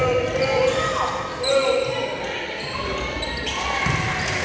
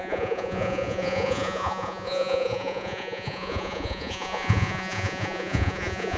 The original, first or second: first